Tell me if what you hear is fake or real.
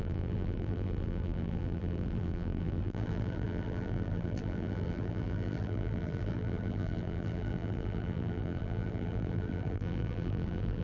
fake